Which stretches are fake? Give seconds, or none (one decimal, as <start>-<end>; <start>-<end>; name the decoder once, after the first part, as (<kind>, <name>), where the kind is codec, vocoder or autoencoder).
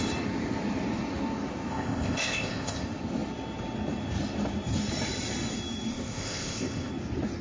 1.7-2.8 (codec, ZipCodec); 5.9-6.9